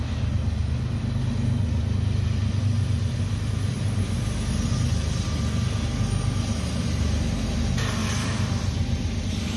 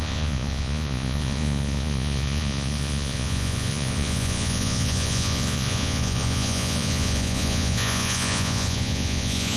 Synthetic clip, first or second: second